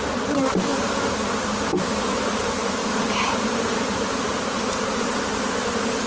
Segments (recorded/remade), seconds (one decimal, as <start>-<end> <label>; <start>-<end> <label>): 0.0-0.7 remade; 0.7-2.0 recorded; 2.0-6.1 remade